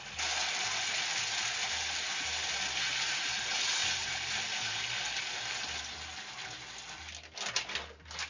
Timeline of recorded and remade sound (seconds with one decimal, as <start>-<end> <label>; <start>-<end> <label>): 0.0-8.3 recorded